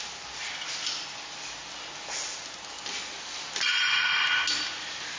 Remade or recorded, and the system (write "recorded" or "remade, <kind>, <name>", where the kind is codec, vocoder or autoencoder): recorded